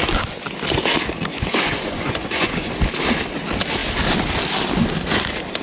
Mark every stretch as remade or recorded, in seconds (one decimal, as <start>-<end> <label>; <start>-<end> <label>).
0.0-1.3 recorded; 1.3-2.7 remade; 2.7-5.6 recorded

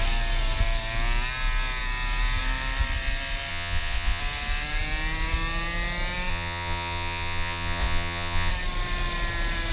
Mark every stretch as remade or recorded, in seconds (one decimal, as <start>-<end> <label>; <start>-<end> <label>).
0.0-3.5 recorded; 3.5-4.2 remade; 4.2-6.3 recorded; 6.3-8.5 remade; 8.5-9.7 recorded